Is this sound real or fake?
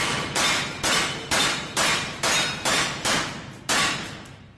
real